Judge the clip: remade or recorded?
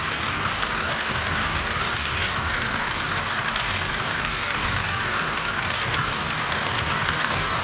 remade